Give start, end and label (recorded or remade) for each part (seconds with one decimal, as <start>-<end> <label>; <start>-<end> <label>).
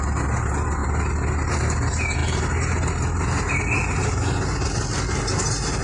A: 0.0-5.8 recorded